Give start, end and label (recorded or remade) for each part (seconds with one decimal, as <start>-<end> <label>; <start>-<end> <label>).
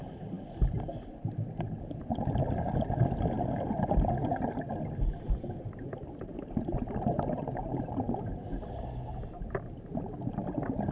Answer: 0.0-10.9 recorded